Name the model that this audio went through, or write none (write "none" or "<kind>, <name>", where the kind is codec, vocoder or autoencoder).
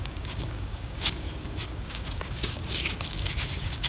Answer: codec, DAC